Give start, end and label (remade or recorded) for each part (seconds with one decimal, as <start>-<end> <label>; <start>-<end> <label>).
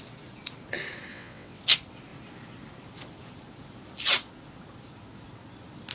0.0-1.1 recorded; 1.1-1.6 remade; 1.6-5.9 recorded